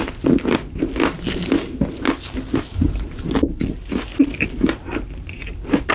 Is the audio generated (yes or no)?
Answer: no